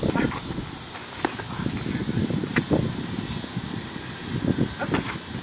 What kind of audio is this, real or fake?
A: real